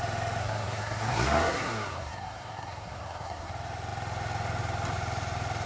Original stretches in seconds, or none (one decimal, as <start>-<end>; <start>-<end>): 0.0-0.4; 3.5-5.7